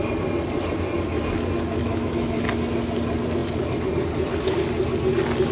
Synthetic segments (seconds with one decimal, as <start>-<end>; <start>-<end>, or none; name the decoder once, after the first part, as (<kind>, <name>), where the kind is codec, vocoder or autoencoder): 1.8-2.4 (autoencoder, DAC-VAE)